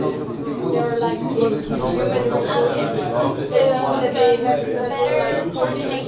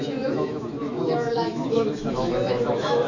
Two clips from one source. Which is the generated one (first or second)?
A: second